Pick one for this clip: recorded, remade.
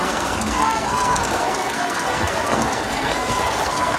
remade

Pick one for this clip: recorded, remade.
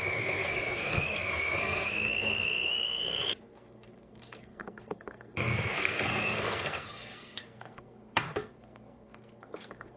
remade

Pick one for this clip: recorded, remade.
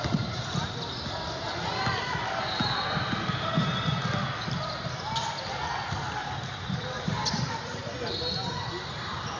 recorded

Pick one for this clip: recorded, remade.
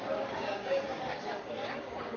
remade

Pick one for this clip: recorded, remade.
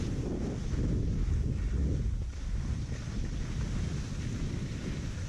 recorded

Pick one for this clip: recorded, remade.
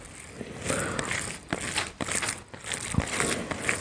recorded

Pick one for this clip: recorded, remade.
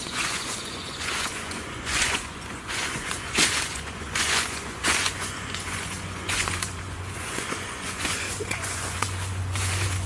remade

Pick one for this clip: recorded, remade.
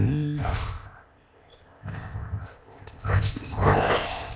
remade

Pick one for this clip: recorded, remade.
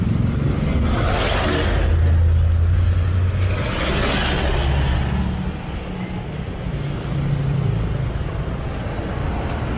recorded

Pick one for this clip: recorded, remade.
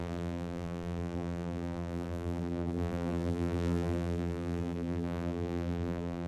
remade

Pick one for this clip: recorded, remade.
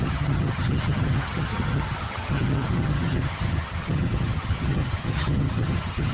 remade